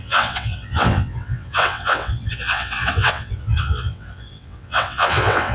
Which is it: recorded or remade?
remade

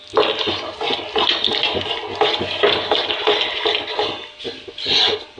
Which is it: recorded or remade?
recorded